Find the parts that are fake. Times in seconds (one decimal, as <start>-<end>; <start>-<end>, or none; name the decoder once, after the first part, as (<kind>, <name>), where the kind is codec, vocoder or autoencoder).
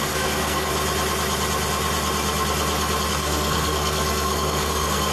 0.0-0.7 (codec, SNAC); 3.1-5.1